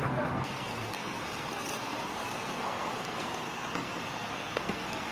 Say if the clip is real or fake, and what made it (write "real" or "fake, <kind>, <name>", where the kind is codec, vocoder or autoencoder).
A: fake, codec, SNAC